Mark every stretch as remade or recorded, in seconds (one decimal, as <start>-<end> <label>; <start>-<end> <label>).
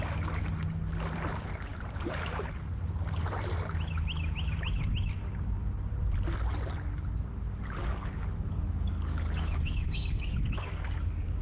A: 0.0-7.8 recorded; 7.8-11.4 remade